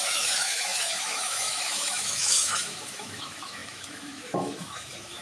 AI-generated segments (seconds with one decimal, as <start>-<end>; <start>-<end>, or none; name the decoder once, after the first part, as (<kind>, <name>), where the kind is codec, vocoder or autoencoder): 0.0-5.2 (autoencoder, DAC-VAE)